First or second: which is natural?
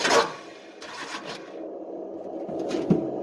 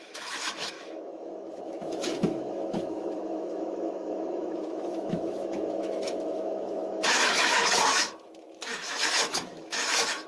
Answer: first